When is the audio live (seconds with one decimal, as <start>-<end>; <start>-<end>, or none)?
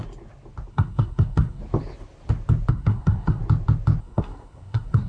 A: 0.0-0.7; 1.6-2.7; 3.4-4.0